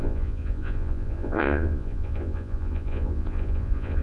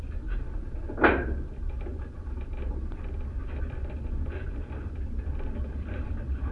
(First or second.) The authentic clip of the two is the second